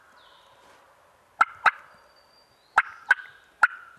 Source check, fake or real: real